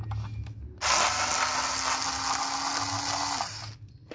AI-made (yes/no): no